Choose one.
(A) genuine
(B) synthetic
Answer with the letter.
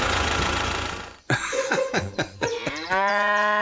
B